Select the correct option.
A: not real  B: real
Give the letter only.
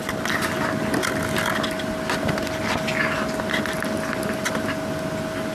B